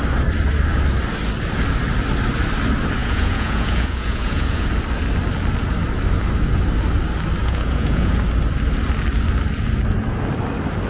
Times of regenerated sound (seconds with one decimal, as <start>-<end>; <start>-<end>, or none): 3.0-4.7; 7.4-8.2